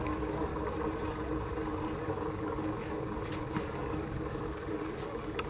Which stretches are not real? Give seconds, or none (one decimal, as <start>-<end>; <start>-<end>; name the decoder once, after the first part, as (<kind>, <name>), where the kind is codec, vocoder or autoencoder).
0.0-0.5 (codec, DAC); 2.0-5.5